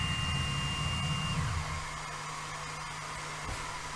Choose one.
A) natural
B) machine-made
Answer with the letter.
A